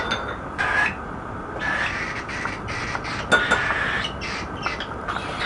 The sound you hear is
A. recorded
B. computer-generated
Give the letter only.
A